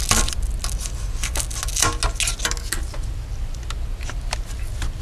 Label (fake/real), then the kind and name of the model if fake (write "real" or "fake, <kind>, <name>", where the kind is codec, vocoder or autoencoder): real